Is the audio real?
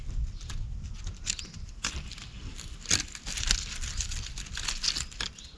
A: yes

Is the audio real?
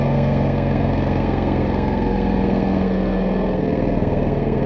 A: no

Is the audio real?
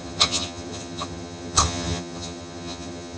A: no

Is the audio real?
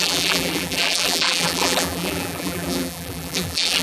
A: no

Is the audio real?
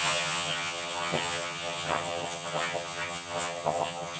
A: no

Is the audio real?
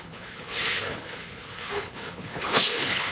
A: no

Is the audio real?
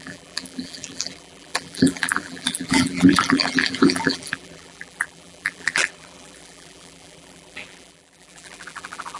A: no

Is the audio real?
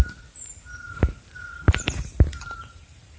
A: no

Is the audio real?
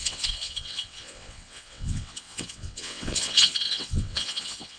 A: no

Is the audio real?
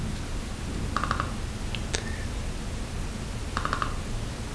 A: yes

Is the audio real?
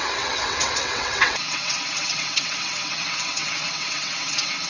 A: no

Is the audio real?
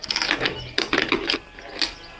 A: yes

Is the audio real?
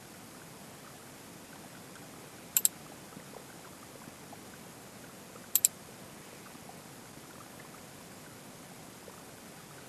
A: yes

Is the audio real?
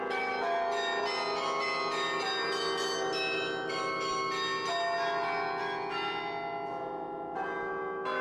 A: yes